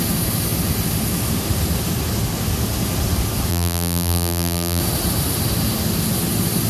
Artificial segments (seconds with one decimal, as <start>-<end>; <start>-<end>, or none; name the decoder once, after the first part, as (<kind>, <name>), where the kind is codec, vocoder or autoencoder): 3.5-4.8 (vocoder, BigVGAN v2)